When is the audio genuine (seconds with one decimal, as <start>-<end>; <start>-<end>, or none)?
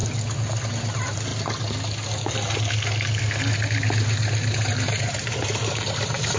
0.0-0.8; 1.3-4.7